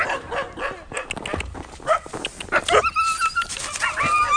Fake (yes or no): no